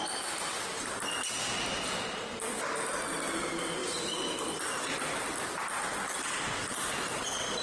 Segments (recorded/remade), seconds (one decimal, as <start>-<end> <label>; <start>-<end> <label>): 0.0-7.6 recorded